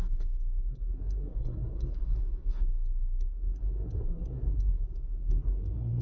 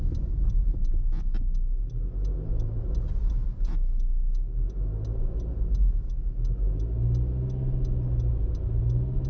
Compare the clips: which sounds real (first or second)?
second